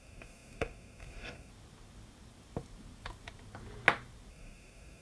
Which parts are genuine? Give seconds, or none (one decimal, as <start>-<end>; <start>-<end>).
1.5-4.3